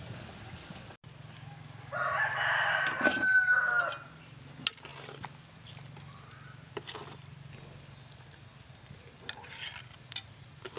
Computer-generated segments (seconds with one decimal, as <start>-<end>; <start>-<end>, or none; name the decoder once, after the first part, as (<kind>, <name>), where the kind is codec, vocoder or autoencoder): none